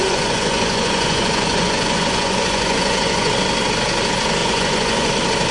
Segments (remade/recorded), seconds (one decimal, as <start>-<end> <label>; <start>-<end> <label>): 0.0-3.3 remade; 3.3-4.4 recorded; 4.4-5.1 remade; 5.1-5.5 recorded